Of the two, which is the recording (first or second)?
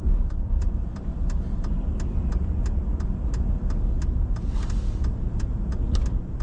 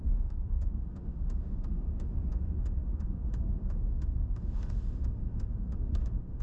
first